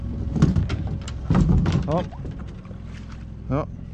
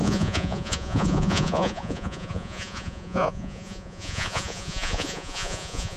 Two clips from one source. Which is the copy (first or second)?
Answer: second